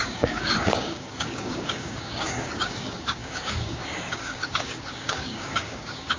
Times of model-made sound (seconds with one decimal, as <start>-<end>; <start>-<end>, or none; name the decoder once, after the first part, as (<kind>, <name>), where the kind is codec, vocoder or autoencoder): 0.0-6.2 (codec, DAC)